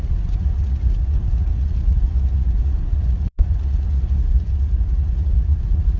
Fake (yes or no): yes